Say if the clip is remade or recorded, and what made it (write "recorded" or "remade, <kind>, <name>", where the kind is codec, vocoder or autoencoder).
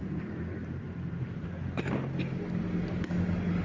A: recorded